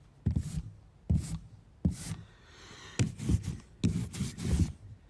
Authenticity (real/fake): real